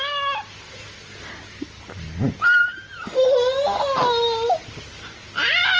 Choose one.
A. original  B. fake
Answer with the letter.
A